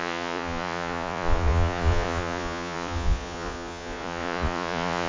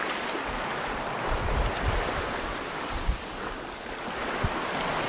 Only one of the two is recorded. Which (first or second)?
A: second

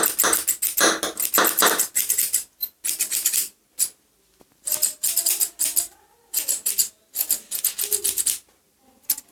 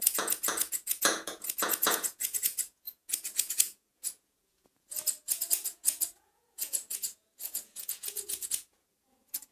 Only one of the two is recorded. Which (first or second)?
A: first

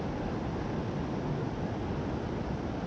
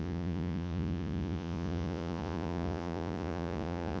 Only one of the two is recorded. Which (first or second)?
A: first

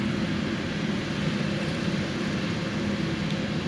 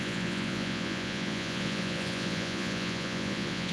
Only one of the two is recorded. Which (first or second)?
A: first